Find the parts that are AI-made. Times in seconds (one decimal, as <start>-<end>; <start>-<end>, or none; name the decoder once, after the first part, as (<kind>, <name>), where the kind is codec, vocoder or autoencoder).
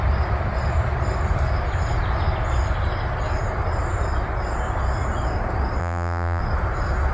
5.8-6.4 (vocoder, BigVGAN v2)